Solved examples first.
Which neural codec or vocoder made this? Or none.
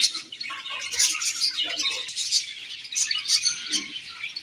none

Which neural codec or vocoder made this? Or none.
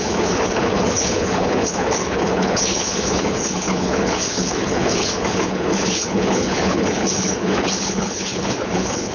codec, HILCodec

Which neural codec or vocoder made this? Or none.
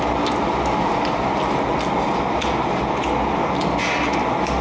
none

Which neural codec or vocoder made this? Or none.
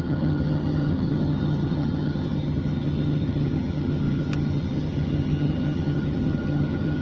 vocoder, HiFi-GAN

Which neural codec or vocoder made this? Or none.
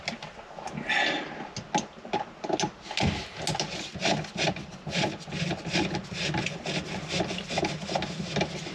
none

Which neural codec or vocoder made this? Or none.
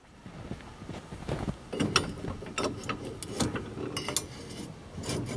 none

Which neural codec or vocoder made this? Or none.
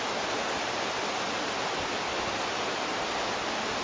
none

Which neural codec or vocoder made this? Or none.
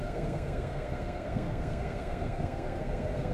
codec, SNAC